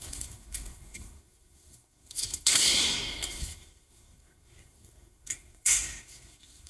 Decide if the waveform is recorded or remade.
remade